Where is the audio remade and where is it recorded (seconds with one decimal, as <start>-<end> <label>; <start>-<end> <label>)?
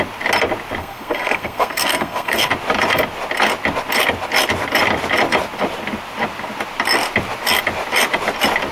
0.0-0.8 recorded; 0.8-2.5 remade; 2.5-8.7 recorded